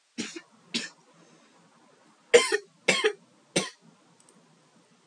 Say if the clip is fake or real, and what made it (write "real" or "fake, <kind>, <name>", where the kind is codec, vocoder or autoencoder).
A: real